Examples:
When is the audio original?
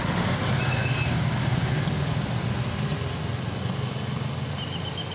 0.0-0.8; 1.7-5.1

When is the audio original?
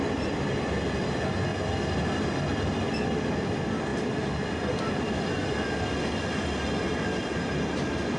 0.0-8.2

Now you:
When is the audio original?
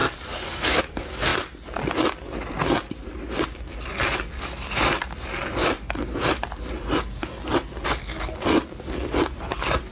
0.8-9.9